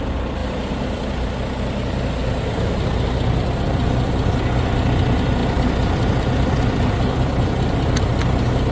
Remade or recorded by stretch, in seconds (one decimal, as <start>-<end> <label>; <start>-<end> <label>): 0.0-0.4 recorded; 0.4-1.3 remade; 1.3-2.2 recorded; 2.2-4.1 remade; 4.1-5.4 recorded; 5.4-8.1 remade; 8.1-8.7 recorded